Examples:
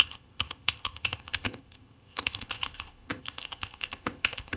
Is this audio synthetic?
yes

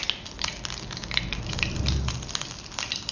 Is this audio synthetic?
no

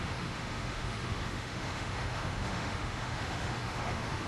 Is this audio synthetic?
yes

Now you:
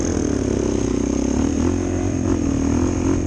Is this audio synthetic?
no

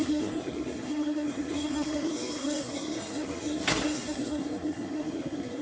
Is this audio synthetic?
yes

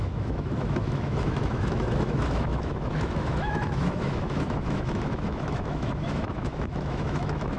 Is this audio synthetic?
yes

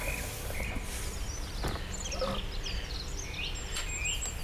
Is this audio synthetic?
no